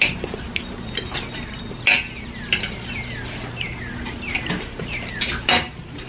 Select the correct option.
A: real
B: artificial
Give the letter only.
A